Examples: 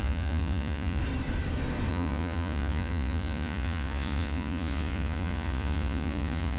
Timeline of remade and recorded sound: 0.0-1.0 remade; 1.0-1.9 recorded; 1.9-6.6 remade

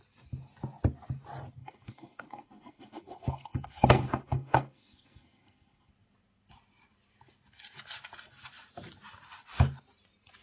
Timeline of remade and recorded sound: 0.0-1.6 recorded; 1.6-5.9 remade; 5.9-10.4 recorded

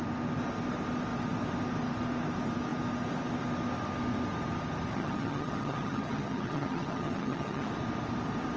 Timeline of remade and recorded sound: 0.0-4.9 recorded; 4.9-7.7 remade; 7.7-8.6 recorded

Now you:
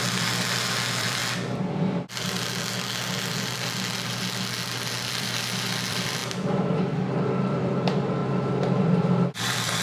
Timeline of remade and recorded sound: 0.0-1.2 remade; 1.2-5.1 recorded; 5.1-6.2 remade; 6.2-7.4 recorded; 7.4-8.2 remade; 8.2-8.8 recorded; 8.8-9.8 remade